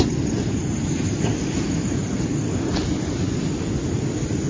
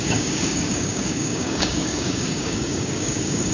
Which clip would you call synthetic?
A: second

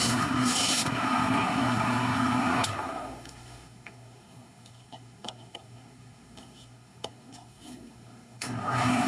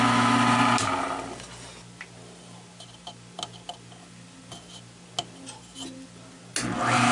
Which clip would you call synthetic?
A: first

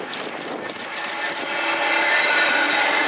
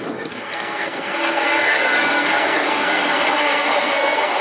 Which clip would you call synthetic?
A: second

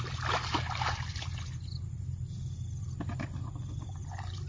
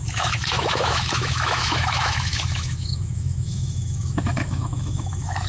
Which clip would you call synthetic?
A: second